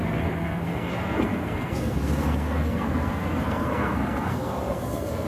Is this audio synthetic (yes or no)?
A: yes